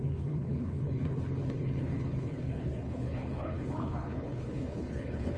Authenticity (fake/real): fake